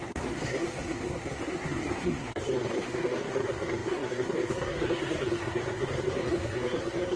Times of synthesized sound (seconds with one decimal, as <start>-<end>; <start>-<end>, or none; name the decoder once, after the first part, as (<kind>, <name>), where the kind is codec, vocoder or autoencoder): 0.0-7.2 (codec, SNAC)